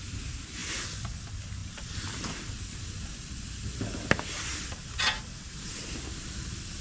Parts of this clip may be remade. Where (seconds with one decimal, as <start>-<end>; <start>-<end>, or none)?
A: 0.6-1.2